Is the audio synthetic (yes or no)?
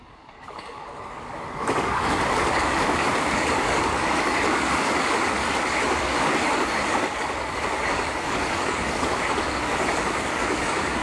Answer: yes